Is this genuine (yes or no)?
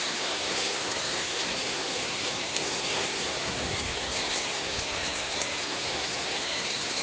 no